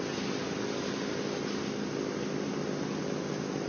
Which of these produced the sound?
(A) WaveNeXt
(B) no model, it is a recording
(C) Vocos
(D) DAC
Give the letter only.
B